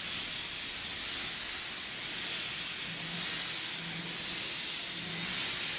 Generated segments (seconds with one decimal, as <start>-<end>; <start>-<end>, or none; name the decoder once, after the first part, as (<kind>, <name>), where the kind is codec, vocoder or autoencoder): none